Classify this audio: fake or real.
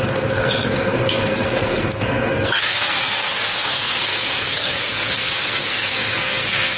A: fake